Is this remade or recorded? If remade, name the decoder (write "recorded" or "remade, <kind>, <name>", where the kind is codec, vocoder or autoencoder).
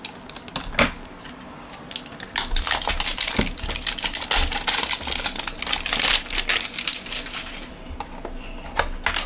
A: recorded